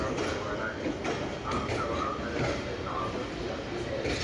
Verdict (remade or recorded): recorded